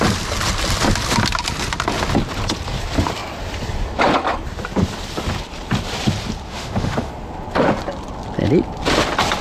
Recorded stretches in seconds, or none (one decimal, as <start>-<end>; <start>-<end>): 0.0-6.5; 7.1-9.4